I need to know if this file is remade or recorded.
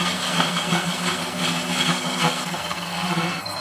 remade